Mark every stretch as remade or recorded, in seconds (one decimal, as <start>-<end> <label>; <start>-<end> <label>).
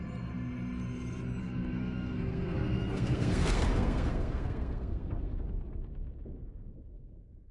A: 0.0-1.4 recorded; 1.4-5.9 remade; 5.9-7.5 recorded